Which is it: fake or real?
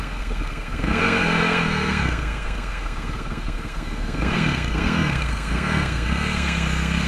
fake